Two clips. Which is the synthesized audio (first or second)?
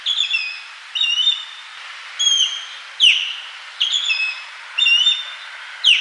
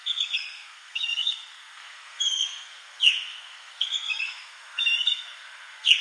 second